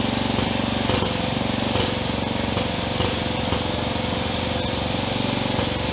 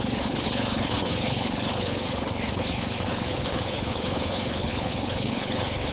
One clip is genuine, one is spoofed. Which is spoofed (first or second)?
second